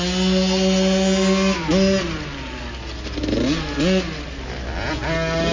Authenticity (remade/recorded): recorded